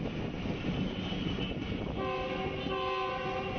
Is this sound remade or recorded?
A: recorded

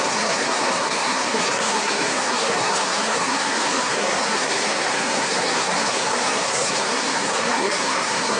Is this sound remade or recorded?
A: remade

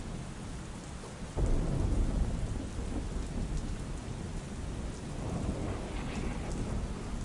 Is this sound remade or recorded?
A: recorded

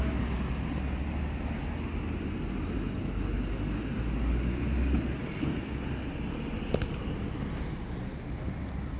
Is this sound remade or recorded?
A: recorded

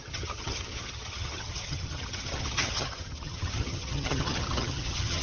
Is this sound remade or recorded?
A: remade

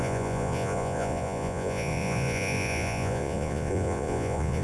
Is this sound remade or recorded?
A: remade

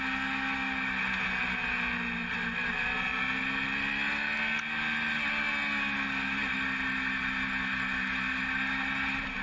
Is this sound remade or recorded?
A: recorded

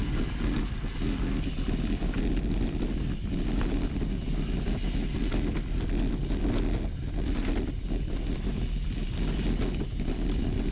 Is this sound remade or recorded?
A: recorded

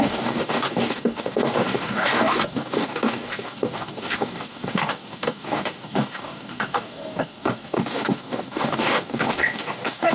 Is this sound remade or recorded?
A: remade